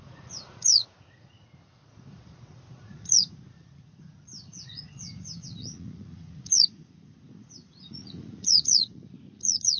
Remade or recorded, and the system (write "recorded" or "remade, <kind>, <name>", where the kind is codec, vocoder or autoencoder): remade, vocoder, Vocos